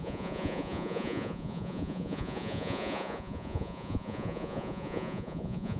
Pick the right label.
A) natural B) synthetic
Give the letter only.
B